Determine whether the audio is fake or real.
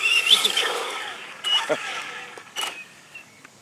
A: fake